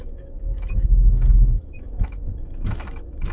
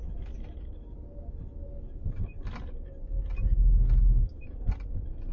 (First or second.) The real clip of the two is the second